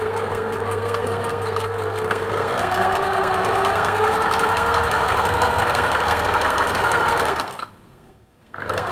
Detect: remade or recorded remade